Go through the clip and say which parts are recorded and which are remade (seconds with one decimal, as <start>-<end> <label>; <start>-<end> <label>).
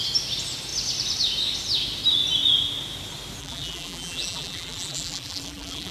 0.0-3.4 recorded; 3.4-5.9 remade